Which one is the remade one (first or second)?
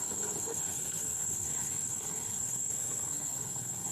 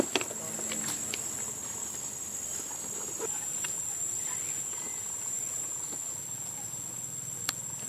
first